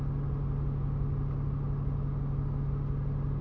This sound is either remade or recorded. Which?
recorded